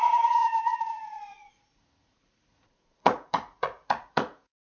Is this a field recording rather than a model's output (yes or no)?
no